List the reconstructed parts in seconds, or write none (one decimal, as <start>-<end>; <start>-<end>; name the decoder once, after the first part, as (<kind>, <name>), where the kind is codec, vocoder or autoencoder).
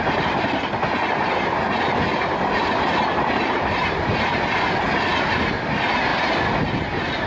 none